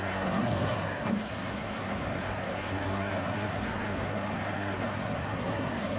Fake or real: fake